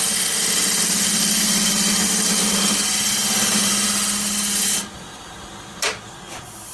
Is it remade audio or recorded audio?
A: recorded